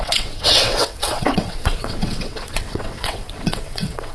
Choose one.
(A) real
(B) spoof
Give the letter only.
B